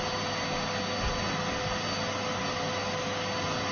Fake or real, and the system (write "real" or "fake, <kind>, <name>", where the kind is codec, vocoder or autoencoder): real